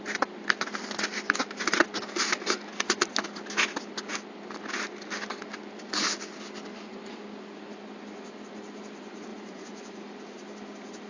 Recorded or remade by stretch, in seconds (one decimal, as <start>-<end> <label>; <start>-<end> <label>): 0.0-9.3 recorded; 9.3-10.0 remade; 10.0-11.1 recorded